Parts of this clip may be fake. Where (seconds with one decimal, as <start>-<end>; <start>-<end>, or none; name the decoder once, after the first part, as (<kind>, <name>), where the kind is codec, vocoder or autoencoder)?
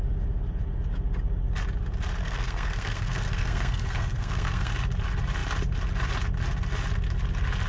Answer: 2.2-4.7 (codec, SNAC)